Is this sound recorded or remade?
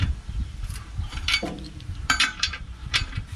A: remade